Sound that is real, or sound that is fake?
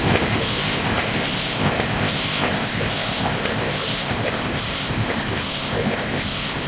fake